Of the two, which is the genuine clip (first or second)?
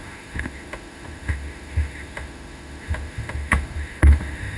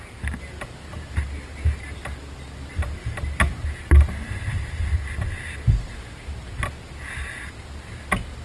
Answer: second